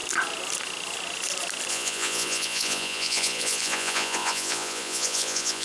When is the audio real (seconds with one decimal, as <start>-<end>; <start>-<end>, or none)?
0.0-1.7